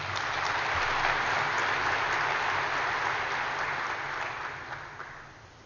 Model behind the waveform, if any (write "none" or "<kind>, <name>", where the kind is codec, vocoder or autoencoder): none